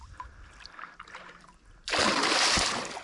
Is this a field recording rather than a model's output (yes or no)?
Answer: yes